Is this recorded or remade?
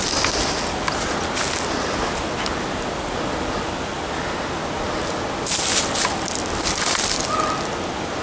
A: recorded